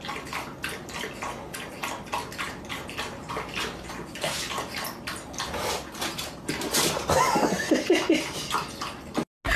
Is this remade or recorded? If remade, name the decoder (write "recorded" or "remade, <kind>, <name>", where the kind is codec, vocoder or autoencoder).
recorded